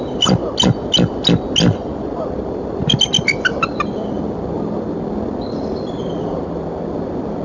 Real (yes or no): yes